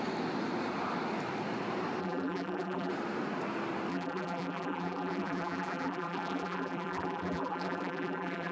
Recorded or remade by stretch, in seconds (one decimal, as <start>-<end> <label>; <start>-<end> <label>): 0.0-2.0 recorded; 2.0-2.9 remade; 2.9-3.9 recorded; 3.9-8.5 remade